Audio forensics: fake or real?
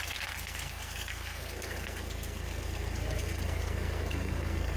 fake